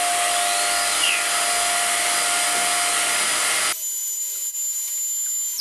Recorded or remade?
recorded